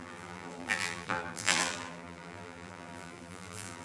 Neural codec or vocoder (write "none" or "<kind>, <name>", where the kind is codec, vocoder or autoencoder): vocoder, BigVGAN v2